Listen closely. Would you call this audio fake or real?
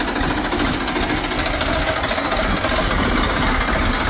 real